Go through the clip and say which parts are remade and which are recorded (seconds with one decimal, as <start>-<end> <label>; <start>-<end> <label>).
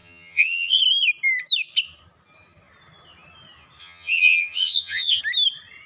0.0-0.8 remade; 0.8-3.8 recorded; 3.8-5.2 remade; 5.2-5.9 recorded